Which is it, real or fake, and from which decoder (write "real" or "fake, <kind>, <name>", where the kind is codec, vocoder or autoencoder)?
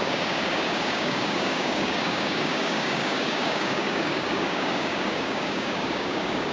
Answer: fake, codec, DAC